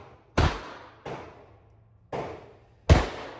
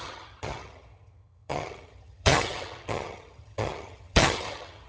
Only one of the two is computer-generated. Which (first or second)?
second